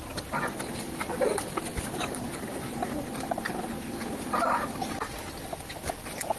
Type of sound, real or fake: real